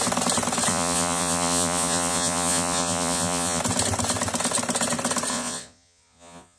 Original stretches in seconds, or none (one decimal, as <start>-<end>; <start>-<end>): 0.0-0.7; 3.6-5.3